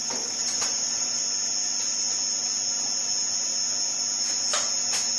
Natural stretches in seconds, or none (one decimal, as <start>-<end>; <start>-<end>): 1.2-5.2